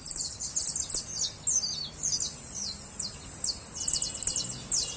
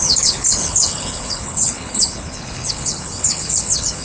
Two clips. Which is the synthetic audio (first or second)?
second